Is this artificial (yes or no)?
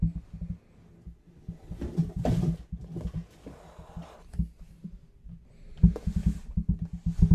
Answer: no